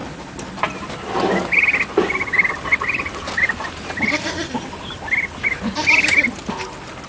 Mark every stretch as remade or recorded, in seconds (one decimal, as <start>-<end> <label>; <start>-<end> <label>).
0.0-7.1 recorded

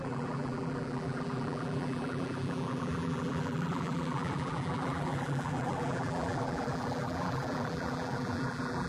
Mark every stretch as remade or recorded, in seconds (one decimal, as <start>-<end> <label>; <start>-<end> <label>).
0.0-8.9 remade

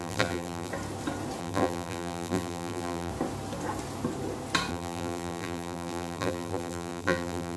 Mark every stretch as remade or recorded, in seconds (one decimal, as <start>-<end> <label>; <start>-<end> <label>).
0.0-0.7 remade; 0.7-1.4 recorded; 1.4-3.1 remade; 3.1-4.7 recorded; 4.7-7.6 remade

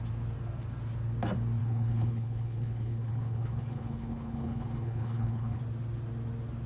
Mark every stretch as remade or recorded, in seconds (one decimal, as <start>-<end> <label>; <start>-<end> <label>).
0.0-1.6 recorded; 1.6-5.6 remade; 5.6-6.7 recorded

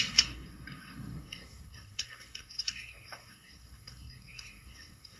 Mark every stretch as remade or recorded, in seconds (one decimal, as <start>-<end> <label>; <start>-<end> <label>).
0.0-5.2 remade

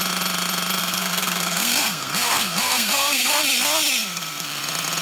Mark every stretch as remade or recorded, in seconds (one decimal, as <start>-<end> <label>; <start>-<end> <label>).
0.0-0.8 recorded; 0.8-3.4 remade; 3.4-4.0 recorded; 4.0-4.6 remade; 4.6-5.0 recorded

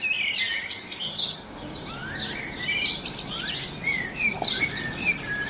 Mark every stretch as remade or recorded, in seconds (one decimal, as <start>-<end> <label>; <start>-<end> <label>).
0.0-2.0 recorded; 2.0-5.5 remade